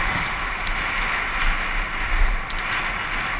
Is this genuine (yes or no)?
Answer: yes